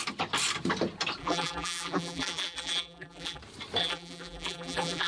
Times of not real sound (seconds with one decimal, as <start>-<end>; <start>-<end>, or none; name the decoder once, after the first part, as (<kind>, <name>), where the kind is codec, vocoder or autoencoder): 1.2-3.4 (vocoder, BigVGAN v2); 3.8-5.1